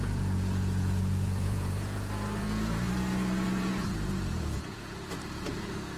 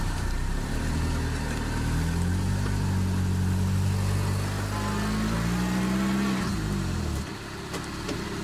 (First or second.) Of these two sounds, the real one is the second